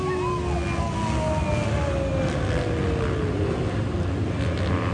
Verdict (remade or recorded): recorded